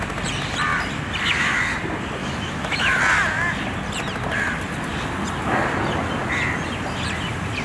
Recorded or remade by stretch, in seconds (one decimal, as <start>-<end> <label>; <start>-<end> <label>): 0.0-2.2 recorded; 2.2-3.0 remade; 3.0-7.6 recorded